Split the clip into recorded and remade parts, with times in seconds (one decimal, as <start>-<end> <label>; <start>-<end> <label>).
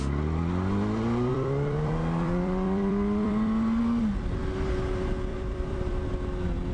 0.0-1.3 recorded; 1.3-3.8 remade; 3.8-5.3 recorded; 5.3-6.1 remade; 6.1-6.7 recorded